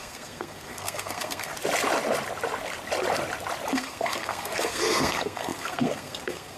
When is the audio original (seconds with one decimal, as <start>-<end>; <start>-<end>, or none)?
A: 1.5-3.7